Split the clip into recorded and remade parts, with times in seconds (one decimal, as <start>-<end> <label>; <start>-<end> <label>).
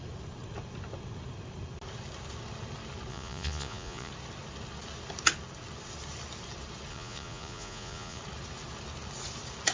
0.0-3.1 recorded; 3.1-4.1 remade; 4.1-6.9 recorded; 6.9-8.2 remade; 8.2-9.7 recorded